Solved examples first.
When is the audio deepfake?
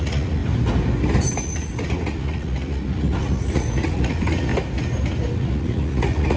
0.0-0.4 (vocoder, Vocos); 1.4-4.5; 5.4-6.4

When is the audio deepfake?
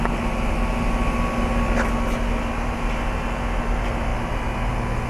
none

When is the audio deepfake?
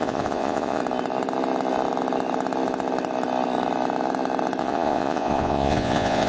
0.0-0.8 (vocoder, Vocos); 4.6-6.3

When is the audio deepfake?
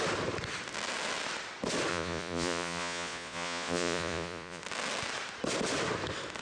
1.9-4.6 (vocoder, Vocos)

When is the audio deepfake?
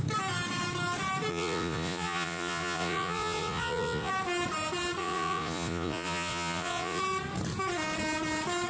1.3-4.1 (vocoder, Vocos); 5.0-7.0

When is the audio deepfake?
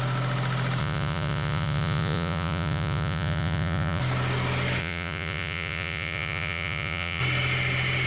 0.8-4.0 (vocoder, Vocos); 4.8-7.2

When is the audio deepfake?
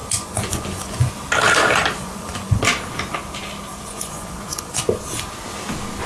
0.0-1.1 (vocoder, Vocos); 2.0-2.6; 3.7-4.8